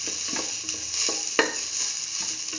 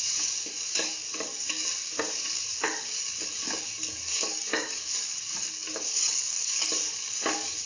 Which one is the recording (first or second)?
first